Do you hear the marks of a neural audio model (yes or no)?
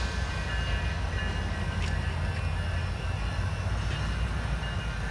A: no